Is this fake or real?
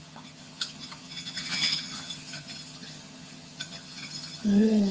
fake